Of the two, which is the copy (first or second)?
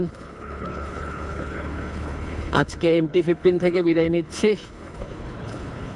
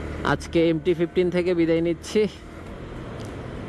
first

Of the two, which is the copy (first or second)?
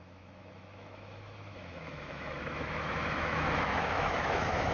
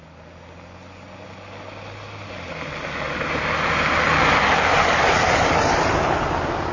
first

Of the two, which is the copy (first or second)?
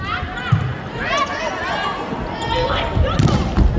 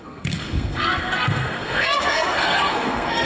second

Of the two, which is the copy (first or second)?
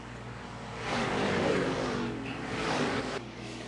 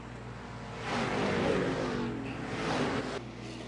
first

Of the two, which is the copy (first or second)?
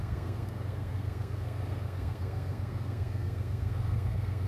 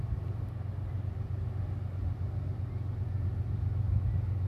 first